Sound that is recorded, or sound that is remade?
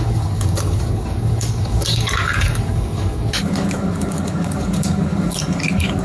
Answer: remade